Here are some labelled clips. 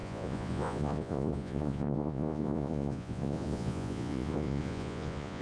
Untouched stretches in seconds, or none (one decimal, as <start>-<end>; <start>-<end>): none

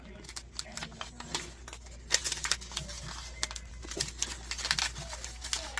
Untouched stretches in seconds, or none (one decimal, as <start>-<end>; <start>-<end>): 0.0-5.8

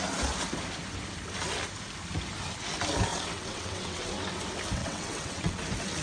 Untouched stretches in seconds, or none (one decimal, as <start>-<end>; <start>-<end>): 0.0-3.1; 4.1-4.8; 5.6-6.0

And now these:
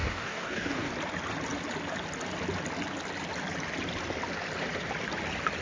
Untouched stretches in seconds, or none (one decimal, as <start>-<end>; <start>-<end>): 0.9-5.6